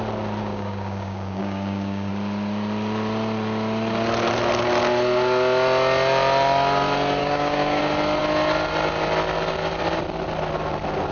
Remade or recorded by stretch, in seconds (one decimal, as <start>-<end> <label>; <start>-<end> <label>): 0.0-0.4 recorded; 0.4-2.1 remade; 2.1-7.2 recorded; 7.2-7.8 remade; 7.8-11.1 recorded